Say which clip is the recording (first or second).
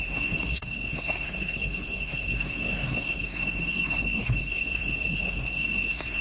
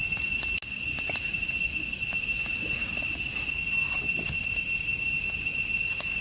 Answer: second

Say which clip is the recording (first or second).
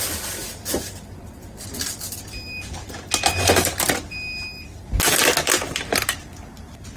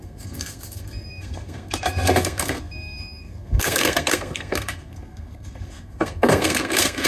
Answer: first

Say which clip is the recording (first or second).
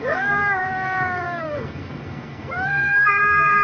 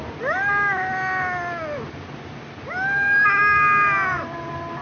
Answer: second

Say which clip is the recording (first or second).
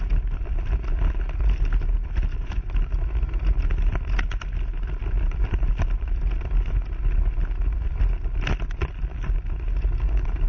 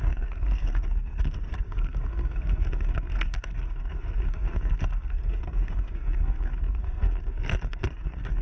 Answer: first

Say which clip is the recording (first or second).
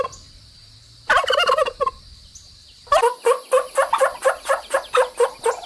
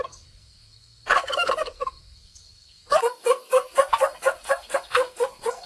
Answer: first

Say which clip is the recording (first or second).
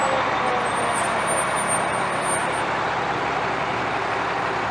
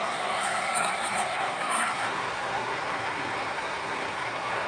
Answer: first